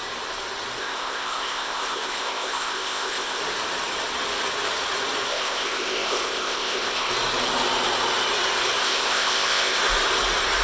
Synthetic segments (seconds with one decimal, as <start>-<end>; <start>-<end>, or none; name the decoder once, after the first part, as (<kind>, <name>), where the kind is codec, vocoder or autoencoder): 0.8-3.4 (codec, ZipCodec); 5.3-7.1; 8.8-9.8